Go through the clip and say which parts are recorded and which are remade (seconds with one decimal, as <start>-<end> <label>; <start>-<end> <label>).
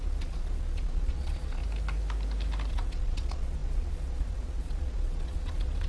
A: 0.0-1.6 remade; 1.6-2.7 recorded; 2.7-5.9 remade